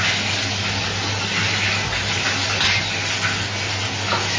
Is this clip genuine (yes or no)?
yes